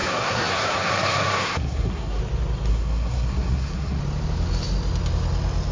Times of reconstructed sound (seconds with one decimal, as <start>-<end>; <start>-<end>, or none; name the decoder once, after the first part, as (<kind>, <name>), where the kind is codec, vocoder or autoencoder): 0.0-2.2 (codec, SNAC); 2.7-4.0